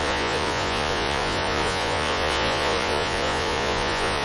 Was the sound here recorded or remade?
remade